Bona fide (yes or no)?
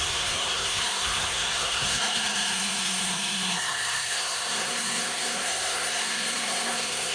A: no